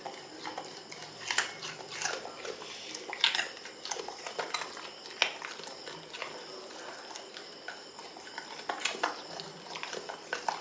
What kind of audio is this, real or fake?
real